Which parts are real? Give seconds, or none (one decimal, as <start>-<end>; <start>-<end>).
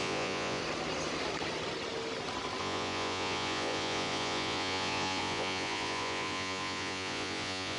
0.6-2.6